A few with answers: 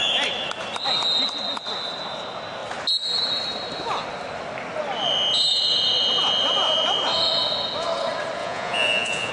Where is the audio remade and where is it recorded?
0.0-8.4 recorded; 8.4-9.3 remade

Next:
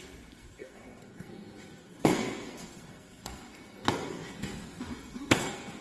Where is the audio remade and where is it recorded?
0.0-5.8 remade

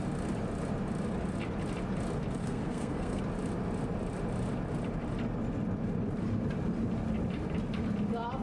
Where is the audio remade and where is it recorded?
0.0-2.4 recorded; 2.4-3.2 remade; 3.2-8.4 recorded

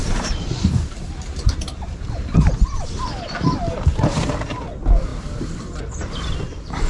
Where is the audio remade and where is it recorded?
0.0-2.8 remade; 2.8-5.1 recorded; 5.1-5.8 remade; 5.8-6.9 recorded

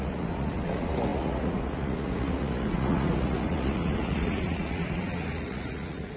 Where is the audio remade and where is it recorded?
0.0-6.2 remade

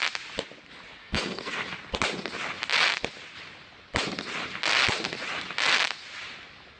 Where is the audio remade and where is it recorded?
0.0-1.0 recorded; 1.0-1.6 remade; 1.6-6.8 recorded

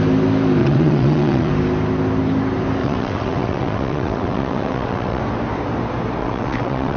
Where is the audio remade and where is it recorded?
0.0-0.6 recorded; 0.6-1.5 remade; 1.5-2.8 recorded; 2.8-5.2 remade; 5.2-6.2 recorded; 6.2-7.0 remade